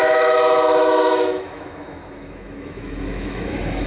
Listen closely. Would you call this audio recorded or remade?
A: remade